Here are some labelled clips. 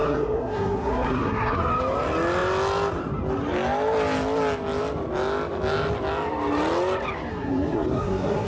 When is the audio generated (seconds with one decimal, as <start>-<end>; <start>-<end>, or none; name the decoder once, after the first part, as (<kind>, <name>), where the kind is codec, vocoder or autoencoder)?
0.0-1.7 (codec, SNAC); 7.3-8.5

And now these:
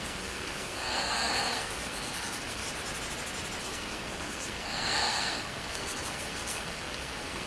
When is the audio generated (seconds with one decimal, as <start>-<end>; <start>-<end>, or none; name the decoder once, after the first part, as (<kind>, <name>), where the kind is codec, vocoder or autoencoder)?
0.0-2.6 (codec, SNAC); 3.6-7.5

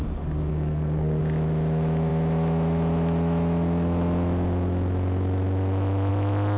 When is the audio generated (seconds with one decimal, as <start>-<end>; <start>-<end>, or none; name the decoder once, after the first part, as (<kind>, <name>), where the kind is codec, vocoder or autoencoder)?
0.5-1.2 (codec, SNAC)